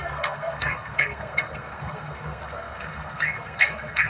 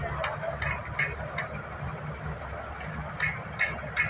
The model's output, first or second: first